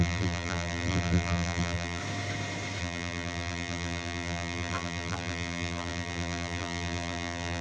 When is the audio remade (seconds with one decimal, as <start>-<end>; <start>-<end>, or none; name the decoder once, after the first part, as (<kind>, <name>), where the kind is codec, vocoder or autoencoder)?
0.0-2.0 (vocoder, BigVGAN v2); 2.8-7.6